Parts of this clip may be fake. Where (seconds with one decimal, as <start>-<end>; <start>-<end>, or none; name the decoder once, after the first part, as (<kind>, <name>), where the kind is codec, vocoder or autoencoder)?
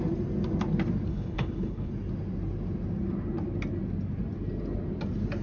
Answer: 1.1-1.9 (codec, HILCodec)